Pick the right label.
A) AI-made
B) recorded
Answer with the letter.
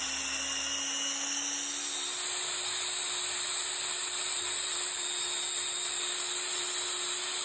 B